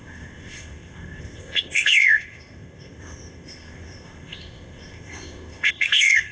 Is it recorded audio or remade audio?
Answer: remade